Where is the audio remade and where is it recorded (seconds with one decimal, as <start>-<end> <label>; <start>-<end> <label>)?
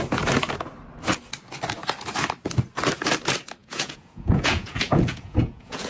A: 0.0-3.6 recorded; 3.6-5.9 remade